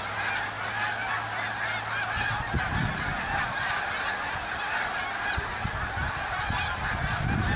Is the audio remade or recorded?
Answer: recorded